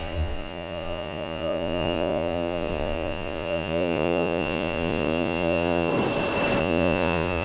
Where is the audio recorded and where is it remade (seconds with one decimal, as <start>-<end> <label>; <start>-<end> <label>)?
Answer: 0.0-5.9 remade; 5.9-6.6 recorded; 6.6-7.4 remade